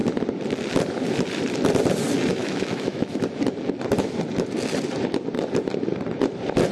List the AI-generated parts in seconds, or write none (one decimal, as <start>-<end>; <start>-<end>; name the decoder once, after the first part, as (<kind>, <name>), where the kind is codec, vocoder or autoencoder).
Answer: 2.3-3.2 (autoencoder, DAC-VAE)

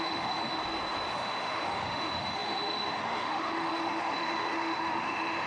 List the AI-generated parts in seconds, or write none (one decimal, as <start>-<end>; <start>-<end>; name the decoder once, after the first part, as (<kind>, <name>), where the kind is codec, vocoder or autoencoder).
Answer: 0.0-0.6 (autoencoder, DAC-VAE); 1.1-5.5

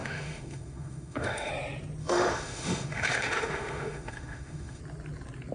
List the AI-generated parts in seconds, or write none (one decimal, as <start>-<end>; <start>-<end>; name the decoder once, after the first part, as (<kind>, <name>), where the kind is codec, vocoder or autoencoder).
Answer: 0.0-1.5 (autoencoder, DAC-VAE); 2.0-4.8

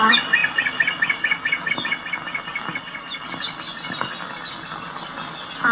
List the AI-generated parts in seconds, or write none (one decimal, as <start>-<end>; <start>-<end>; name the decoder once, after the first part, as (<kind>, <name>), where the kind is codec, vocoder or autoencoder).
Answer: none

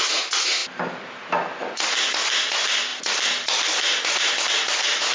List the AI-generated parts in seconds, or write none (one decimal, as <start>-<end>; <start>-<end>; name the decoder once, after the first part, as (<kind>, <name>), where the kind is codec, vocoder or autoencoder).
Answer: none

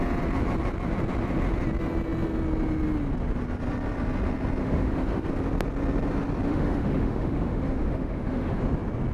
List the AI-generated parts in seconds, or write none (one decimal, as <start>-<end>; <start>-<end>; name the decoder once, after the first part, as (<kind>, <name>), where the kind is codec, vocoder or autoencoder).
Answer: 4.6-5.3 (autoencoder, DAC-VAE); 6.5-8.6

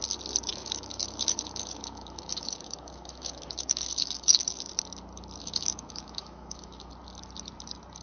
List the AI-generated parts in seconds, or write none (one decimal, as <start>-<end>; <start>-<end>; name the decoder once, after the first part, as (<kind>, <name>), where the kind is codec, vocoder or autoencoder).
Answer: 0.5-4.7 (autoencoder, DAC-VAE); 5.4-6.9